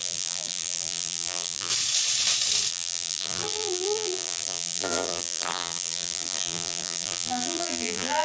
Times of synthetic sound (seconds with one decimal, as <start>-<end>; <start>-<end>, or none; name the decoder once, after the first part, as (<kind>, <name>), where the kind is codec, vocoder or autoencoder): 0.0-1.7 (vocoder, BigVGAN v2); 2.7-8.2